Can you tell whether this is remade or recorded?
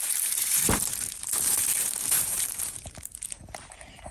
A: remade